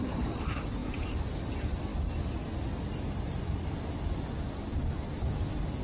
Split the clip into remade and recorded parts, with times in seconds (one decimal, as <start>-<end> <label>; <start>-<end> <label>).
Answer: 0.0-5.8 recorded